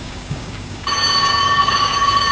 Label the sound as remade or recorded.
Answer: remade